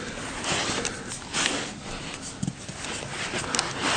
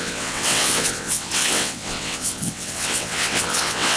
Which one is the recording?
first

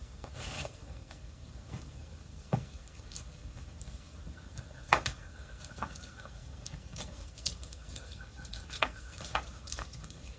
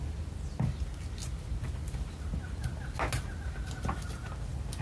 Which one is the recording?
second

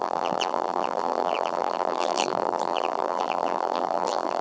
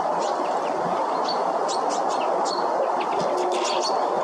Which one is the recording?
second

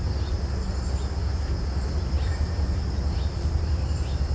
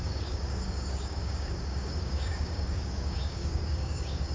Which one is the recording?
first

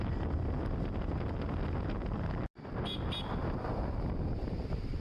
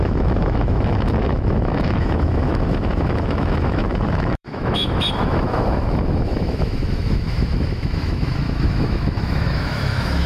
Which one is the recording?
first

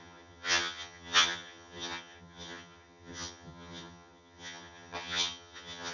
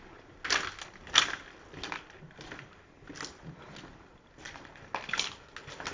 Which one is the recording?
second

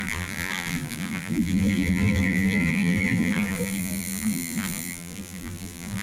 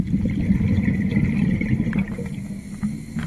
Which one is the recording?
second